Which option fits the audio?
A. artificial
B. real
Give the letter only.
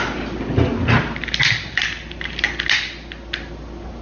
B